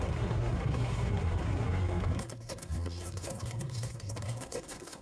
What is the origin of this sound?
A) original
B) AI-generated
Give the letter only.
B